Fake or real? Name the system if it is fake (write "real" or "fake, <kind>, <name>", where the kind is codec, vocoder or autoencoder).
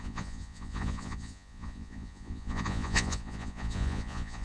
fake, vocoder, Vocos